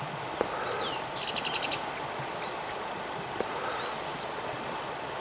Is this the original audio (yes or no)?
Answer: yes